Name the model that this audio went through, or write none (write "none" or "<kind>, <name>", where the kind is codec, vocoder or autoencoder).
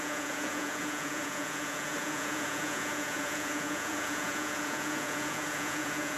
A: vocoder, Vocos